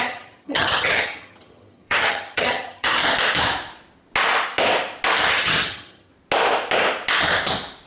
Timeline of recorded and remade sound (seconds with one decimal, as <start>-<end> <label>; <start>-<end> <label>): 0.0-3.0 remade; 3.0-5.3 recorded; 5.3-6.1 remade; 6.1-7.9 recorded